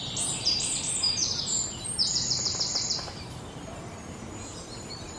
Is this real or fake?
fake